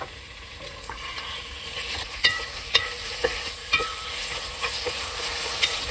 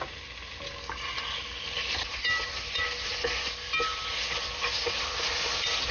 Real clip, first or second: second